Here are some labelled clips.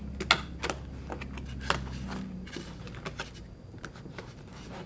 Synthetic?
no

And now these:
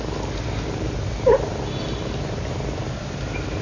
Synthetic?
no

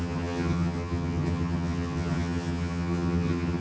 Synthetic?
yes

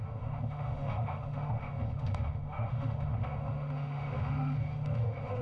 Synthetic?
yes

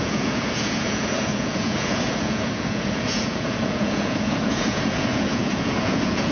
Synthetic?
yes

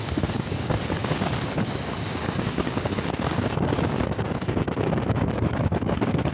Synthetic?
yes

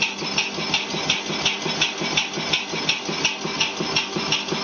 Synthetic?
no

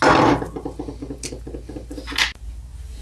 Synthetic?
no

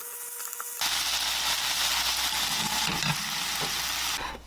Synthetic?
no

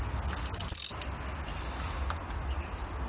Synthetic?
no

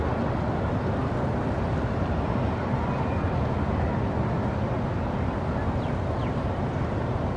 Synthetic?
no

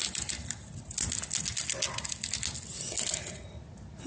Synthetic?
no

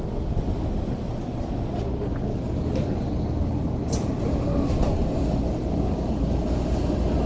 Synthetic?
no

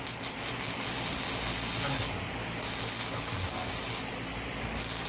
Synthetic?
no